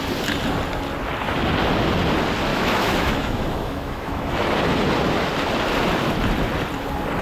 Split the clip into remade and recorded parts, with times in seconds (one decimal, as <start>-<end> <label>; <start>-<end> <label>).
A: 0.0-2.5 recorded; 2.5-4.5 remade; 4.5-7.2 recorded